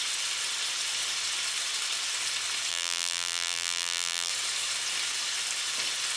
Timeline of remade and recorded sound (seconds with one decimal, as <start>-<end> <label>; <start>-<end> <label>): 0.0-2.7 recorded; 2.7-4.3 remade; 4.3-6.2 recorded